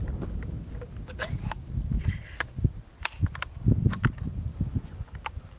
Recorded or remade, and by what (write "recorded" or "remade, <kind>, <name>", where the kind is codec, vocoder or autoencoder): recorded